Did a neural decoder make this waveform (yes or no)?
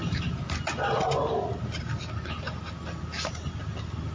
no